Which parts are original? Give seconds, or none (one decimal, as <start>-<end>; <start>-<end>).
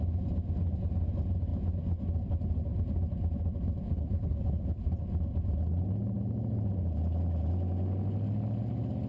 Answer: 0.0-3.9; 4.9-9.1